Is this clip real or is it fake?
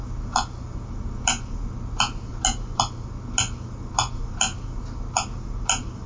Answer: real